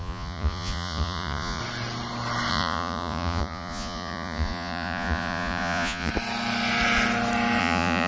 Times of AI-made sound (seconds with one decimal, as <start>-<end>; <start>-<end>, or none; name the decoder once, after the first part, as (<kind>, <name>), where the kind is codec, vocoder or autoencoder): 0.0-1.6 (vocoder, Vocos); 2.5-6.1; 7.6-8.1